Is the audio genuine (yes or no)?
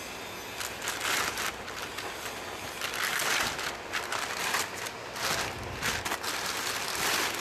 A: yes